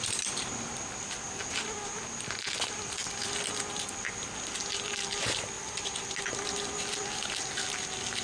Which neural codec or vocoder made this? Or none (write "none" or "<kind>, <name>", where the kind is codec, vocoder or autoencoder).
none